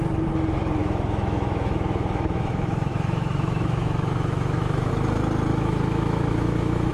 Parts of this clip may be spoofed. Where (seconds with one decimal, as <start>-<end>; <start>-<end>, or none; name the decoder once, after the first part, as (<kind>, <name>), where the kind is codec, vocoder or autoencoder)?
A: 0.8-4.9 (autoencoder, DAC-VAE); 5.5-6.9